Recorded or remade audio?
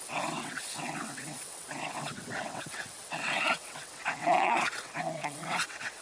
remade